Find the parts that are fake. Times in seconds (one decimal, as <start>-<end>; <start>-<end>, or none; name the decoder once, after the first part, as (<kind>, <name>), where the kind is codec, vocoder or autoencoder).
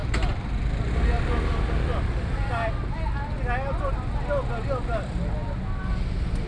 none